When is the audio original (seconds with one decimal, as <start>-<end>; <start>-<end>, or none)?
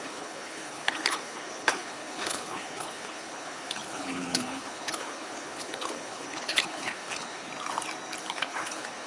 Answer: 7.5-8.2